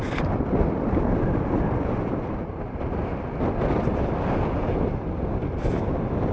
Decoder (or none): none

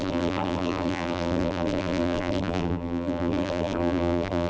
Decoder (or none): vocoder, BigVGAN v2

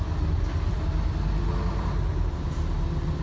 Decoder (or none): none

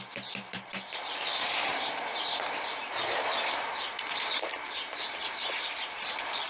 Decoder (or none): vocoder, BigVGAN v2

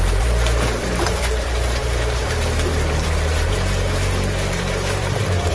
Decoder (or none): vocoder, BigVGAN v2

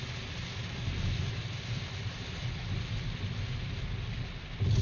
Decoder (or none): none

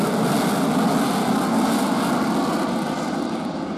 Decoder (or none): none